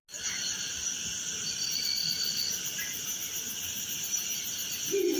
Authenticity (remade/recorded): recorded